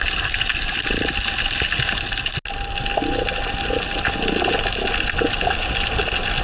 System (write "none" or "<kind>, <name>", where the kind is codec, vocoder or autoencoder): none